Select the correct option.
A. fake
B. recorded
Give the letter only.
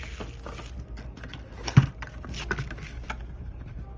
B